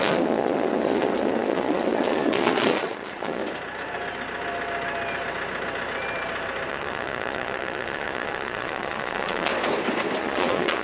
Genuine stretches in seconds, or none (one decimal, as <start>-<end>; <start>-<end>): 3.4-6.7; 9.5-10.2